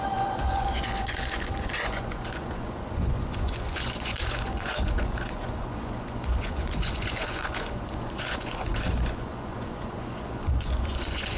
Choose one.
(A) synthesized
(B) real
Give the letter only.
A